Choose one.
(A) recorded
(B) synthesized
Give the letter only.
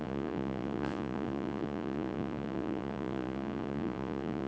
B